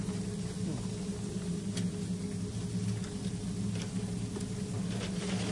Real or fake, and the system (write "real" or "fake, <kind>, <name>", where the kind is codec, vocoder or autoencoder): real